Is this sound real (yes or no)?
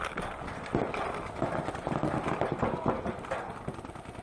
yes